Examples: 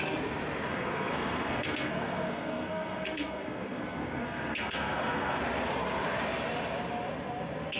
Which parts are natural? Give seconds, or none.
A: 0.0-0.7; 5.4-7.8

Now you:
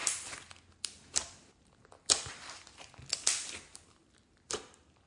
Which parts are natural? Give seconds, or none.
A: 0.0-5.1

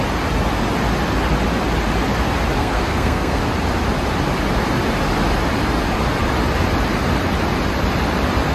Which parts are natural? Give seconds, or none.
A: 0.0-2.6; 3.4-8.5

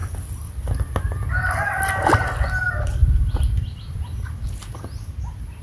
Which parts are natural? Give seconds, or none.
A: 0.0-5.6

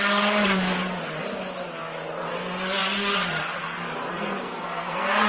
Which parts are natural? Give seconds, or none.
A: 0.0-4.1

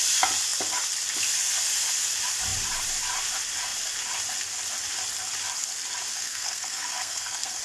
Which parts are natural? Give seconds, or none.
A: 0.0-6.1

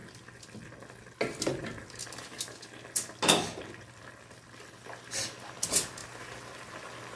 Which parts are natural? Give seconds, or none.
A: 0.0-7.2

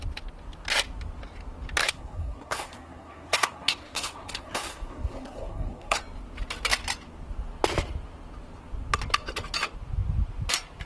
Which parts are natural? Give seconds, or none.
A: 0.0-1.8; 6.0-10.9